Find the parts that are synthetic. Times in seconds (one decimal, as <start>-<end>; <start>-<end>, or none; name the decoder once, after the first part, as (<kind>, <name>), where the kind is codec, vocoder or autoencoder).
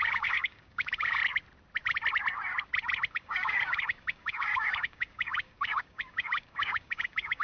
0.0-1.2 (codec, DAC); 3.1-7.4